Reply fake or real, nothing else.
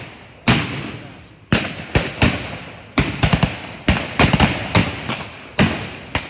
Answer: real